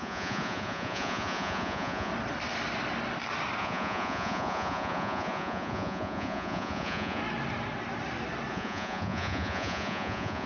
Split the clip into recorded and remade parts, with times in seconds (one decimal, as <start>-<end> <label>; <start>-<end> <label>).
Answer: 0.0-2.1 remade; 2.1-3.6 recorded; 3.6-7.2 remade; 7.2-8.5 recorded; 8.5-10.5 remade